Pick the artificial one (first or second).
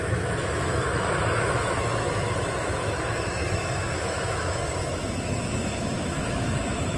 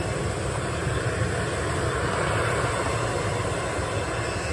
first